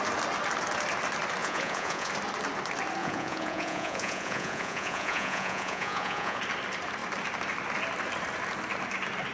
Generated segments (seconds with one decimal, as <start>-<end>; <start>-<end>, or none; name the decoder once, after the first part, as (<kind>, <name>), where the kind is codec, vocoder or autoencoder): 1.4-2.1 (vocoder, Vocos); 3.0-6.4